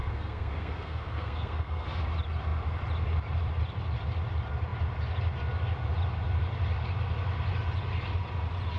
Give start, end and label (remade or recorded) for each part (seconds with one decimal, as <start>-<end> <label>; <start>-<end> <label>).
0.0-2.0 remade; 2.0-8.8 recorded